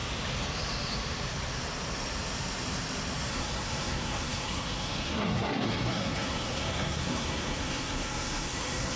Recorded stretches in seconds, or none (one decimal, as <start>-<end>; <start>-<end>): 0.0-3.3